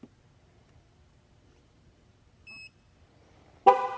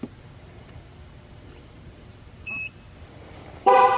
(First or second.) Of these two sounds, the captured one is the first